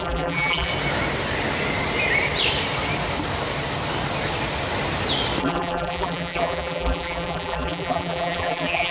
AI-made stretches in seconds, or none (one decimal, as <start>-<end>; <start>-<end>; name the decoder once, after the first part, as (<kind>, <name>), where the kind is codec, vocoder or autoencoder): 0.0-0.7 (vocoder, BigVGAN v2); 5.4-8.9